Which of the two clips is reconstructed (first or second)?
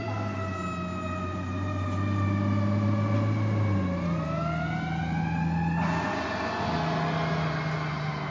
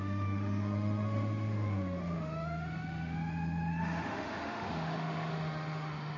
second